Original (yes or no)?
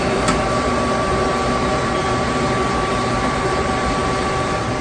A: no